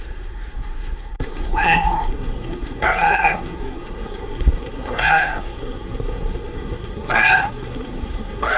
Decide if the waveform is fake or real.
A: fake